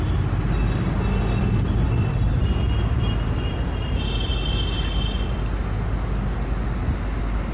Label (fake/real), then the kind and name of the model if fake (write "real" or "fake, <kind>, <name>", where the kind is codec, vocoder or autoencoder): real